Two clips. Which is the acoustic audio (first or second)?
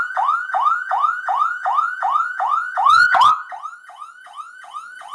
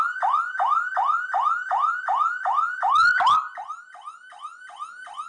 second